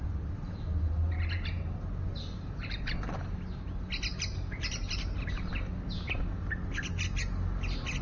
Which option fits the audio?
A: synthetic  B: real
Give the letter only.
B